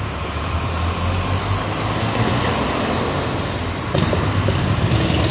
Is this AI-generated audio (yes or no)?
no